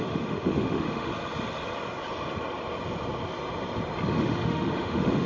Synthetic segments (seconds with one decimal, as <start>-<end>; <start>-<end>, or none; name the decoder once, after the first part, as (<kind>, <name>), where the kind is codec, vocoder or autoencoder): 0.0-1.1 (autoencoder, DAC-VAE); 4.1-5.3